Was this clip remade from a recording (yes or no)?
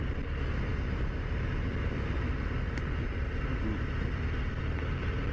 no